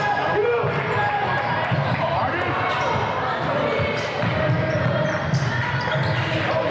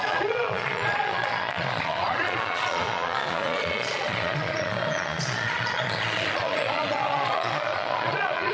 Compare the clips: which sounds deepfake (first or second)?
second